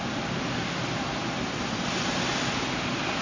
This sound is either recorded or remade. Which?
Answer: recorded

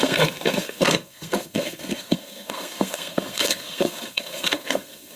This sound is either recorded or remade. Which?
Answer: remade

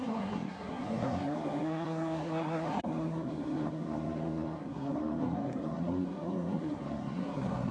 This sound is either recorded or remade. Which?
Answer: remade